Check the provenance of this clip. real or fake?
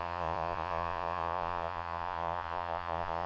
fake